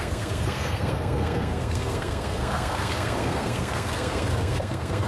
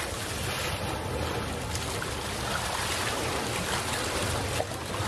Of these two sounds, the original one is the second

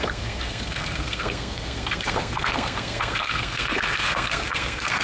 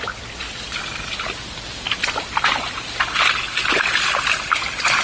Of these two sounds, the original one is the second